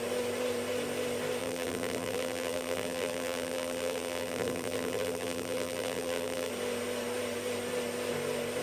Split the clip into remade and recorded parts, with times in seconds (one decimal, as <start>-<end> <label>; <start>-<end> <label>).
0.0-1.4 recorded; 1.4-6.5 remade; 6.5-8.6 recorded